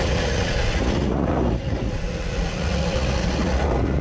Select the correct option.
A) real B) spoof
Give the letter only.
B